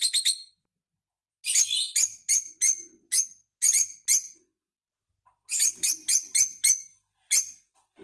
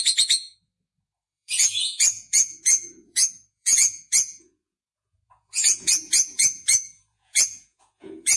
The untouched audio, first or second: first